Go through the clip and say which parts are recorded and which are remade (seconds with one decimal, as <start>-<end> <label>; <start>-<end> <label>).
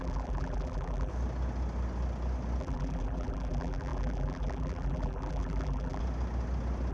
0.0-1.1 remade; 1.1-2.6 recorded; 2.6-6.0 remade; 6.0-6.9 recorded